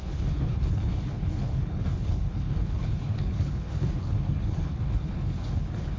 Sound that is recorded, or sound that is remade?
remade